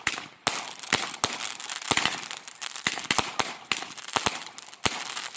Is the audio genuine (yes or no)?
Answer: yes